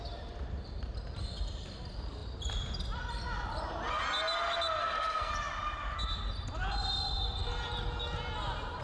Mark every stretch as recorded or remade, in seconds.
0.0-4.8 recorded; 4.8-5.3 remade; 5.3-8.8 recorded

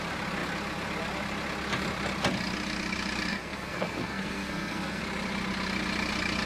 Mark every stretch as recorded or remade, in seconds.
0.0-3.3 recorded; 3.3-5.0 remade; 5.0-6.5 recorded

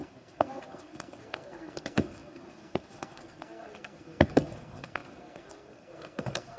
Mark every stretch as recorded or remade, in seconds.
0.0-6.6 remade